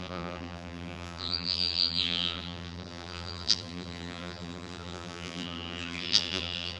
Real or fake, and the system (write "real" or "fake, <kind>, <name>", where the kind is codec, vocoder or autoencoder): fake, vocoder, BigVGAN v2